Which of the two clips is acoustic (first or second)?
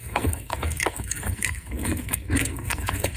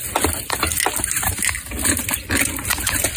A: second